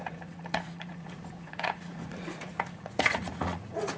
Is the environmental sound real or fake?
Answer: fake